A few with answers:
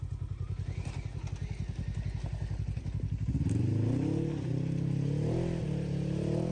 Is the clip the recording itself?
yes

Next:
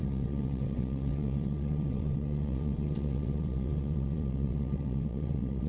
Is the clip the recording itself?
no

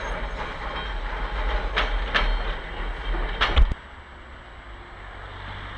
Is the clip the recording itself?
yes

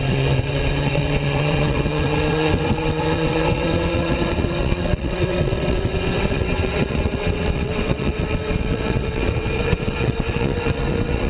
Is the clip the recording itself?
no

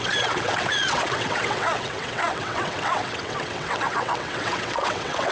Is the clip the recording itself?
no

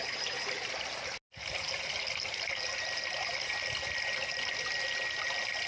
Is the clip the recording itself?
yes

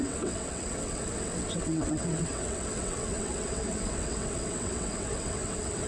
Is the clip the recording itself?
no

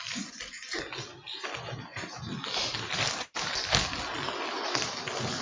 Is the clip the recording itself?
yes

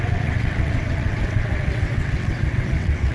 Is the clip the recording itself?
no